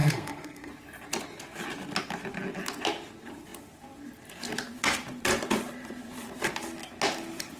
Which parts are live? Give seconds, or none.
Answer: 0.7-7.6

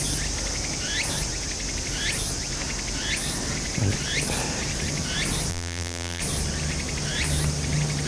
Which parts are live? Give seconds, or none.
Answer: 0.0-5.5; 6.2-8.1

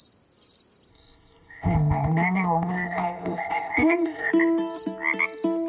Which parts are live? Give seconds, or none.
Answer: 0.0-0.9; 4.3-5.7

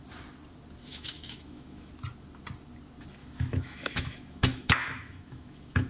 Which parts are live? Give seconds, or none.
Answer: 0.0-0.9; 1.9-3.2